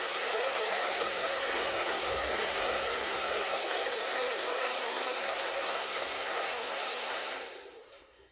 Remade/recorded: remade